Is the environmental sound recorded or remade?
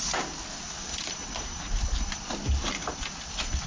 recorded